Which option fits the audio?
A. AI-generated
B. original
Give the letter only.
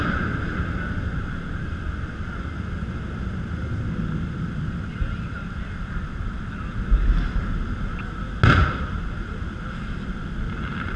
B